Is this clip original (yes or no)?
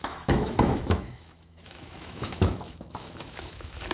no